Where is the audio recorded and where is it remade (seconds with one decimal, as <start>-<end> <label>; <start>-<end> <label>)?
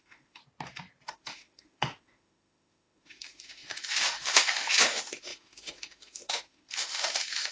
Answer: 0.0-0.4 remade; 0.4-1.1 recorded; 1.1-7.5 remade